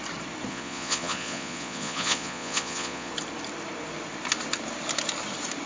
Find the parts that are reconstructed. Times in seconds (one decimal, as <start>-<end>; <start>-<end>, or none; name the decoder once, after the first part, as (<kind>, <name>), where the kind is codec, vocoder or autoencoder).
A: 0.5-3.1 (vocoder, Vocos)

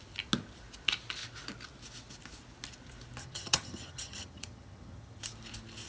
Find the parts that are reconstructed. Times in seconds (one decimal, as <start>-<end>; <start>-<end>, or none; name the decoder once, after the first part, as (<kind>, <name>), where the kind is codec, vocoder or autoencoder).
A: 3.2-5.2 (vocoder, HiFi-GAN)

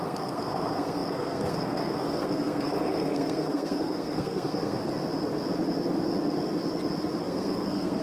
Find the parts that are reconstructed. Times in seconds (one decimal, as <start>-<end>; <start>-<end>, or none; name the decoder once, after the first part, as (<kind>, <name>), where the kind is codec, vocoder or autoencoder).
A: 0.0-4.8 (codec, SNAC); 7.2-8.0